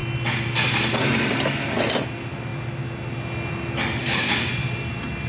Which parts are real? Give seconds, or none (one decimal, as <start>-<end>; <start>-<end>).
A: 0.0-4.0; 4.5-5.3

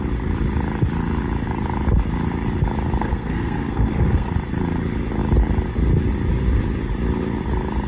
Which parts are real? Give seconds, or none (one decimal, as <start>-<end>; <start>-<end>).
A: 0.0-3.0; 4.3-7.9

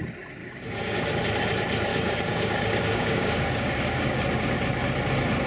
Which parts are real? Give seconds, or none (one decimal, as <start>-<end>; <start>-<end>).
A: 0.0-0.4; 1.1-1.9; 4.2-5.5

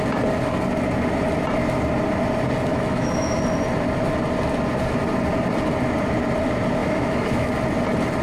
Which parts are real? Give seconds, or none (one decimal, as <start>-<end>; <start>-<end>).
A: 0.0-2.7; 3.4-6.8; 7.5-8.2

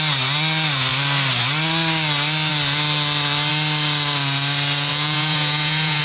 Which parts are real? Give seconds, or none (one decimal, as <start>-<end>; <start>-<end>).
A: 0.0-4.9